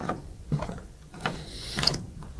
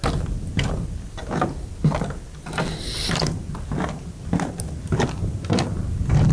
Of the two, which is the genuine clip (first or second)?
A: second